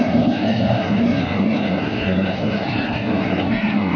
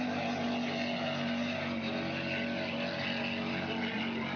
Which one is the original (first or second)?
second